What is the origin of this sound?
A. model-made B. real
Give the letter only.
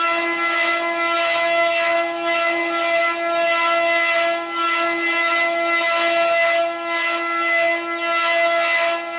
B